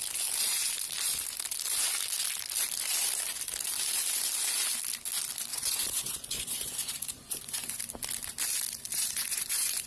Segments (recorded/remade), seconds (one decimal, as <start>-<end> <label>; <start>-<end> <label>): 0.0-5.5 recorded; 5.5-7.8 remade; 7.8-8.9 recorded; 8.9-9.9 remade